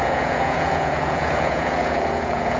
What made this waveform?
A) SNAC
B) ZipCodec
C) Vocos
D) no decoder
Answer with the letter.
C